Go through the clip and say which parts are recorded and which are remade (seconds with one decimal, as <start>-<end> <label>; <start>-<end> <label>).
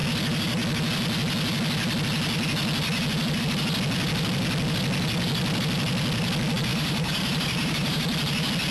0.0-6.7 recorded; 6.7-8.0 remade; 8.0-8.7 recorded